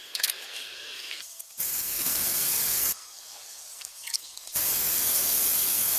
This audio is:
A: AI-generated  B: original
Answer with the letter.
A